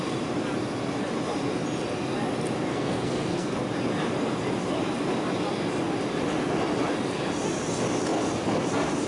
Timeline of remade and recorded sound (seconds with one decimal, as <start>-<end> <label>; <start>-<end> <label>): 0.0-2.7 recorded; 2.7-3.6 remade; 3.6-9.1 recorded

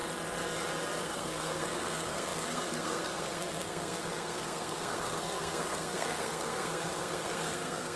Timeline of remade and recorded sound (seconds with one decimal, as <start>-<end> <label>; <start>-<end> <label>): 0.0-1.0 recorded; 1.0-8.0 remade